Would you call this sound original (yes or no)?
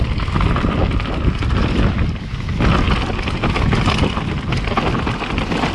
yes